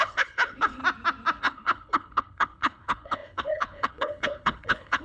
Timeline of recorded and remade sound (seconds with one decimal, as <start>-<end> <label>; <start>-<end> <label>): 0.0-0.8 remade; 0.8-1.4 recorded; 1.4-5.0 remade